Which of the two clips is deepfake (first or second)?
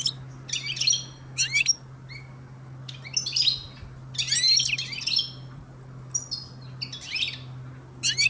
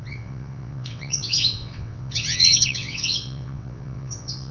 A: second